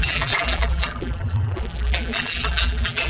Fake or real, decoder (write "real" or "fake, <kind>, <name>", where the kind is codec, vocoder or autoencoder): fake, vocoder, BigVGAN v2